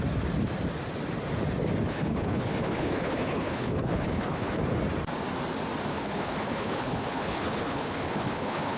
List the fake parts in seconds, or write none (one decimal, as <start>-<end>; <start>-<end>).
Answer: 1.9-4.6; 5.9-8.8